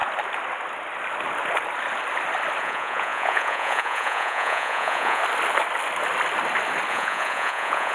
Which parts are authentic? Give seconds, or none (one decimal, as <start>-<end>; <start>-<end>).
0.0-2.6; 5.2-6.9